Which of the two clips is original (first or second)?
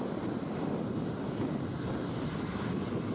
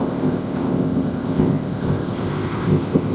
first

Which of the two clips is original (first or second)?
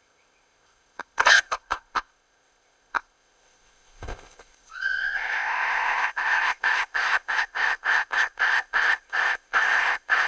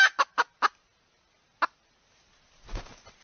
second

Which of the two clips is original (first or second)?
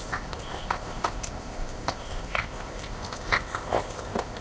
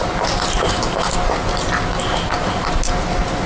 second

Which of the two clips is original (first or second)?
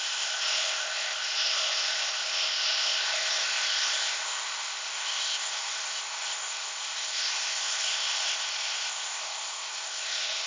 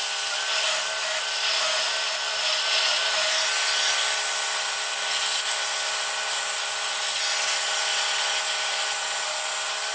second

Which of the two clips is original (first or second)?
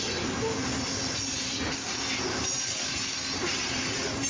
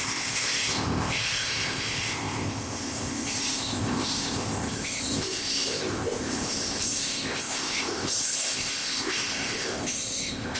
first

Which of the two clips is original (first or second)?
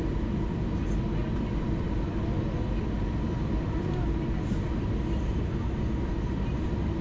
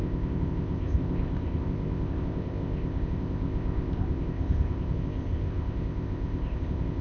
first